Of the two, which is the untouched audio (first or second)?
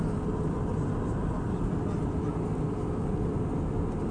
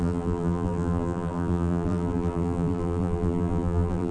first